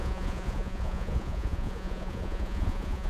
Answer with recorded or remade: remade